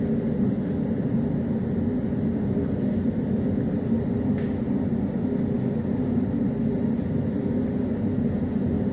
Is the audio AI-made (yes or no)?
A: no